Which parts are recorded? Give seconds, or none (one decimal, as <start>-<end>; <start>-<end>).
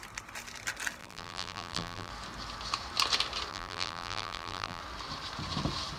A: 0.0-1.0; 2.1-3.5; 4.8-6.0